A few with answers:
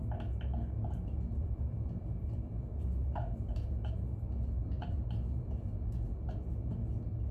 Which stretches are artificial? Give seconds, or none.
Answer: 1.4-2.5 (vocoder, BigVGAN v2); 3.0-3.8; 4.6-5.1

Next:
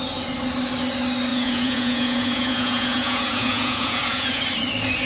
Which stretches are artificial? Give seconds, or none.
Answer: 1.3-4.4 (vocoder, Vocos)

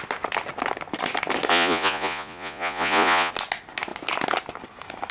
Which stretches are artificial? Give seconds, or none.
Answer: 1.5-3.3 (vocoder, Vocos)

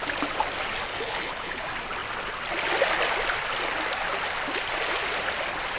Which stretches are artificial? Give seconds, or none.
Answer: 0.9-1.6 (codec, HILCodec)

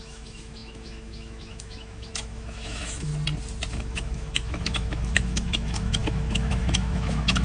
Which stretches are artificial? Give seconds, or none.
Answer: 0.0-3.1 (autoencoder, DAC-VAE); 3.7-7.4

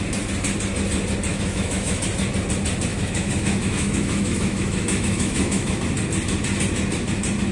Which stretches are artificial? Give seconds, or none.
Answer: 1.3-2.0 (autoencoder, DAC-VAE); 2.9-5.8

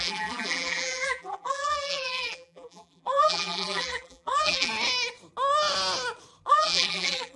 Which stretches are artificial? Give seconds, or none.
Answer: 0.0-4.7 (vocoder, BigVGAN v2); 6.5-7.4